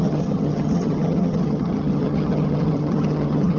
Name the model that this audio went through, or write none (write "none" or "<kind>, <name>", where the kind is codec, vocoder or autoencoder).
vocoder, HiFi-GAN